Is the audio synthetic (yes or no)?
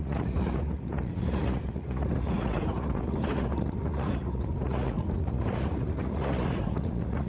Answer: yes